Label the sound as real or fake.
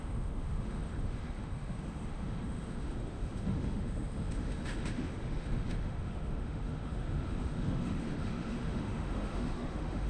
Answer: fake